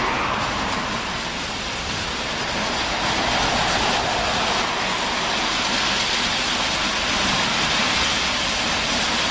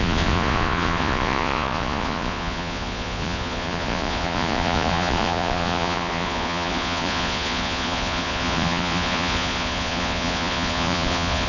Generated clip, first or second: second